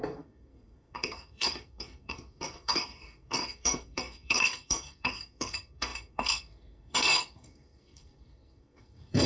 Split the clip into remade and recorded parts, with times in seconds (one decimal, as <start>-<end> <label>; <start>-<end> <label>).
0.0-9.3 remade